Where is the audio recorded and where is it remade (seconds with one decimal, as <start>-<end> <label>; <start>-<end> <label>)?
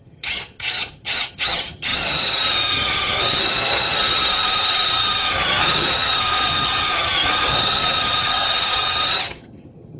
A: 0.0-10.0 remade